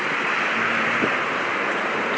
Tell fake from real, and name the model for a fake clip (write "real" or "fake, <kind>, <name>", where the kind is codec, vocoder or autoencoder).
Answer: fake, vocoder, BigVGAN v2